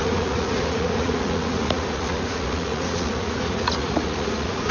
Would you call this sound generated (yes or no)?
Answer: yes